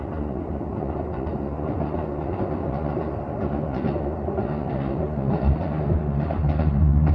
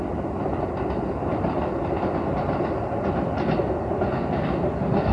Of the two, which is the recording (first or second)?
second